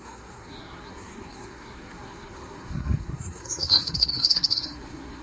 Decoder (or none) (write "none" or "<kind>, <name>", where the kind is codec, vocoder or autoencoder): codec, SNAC